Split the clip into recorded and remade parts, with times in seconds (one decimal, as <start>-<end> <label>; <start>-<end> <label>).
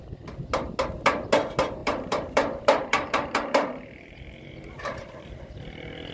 0.0-1.8 recorded; 1.8-5.5 remade; 5.5-6.1 recorded